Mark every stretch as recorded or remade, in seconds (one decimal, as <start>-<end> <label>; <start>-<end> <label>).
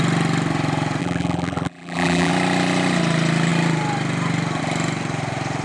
0.0-1.0 recorded; 1.0-2.3 remade; 2.3-5.6 recorded